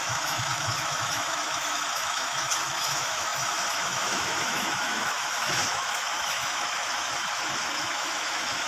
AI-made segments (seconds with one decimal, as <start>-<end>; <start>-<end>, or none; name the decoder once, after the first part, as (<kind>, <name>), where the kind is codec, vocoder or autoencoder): 0.0-8.7 (autoencoder, DAC-VAE)